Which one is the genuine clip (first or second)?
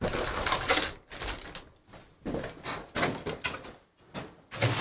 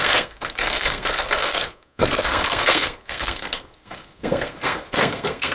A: first